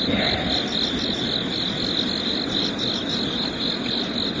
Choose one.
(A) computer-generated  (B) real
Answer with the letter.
B